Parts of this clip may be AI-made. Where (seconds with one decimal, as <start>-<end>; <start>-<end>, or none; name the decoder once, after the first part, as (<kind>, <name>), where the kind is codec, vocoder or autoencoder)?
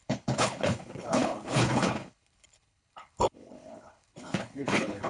0.0-5.1 (codec, HILCodec)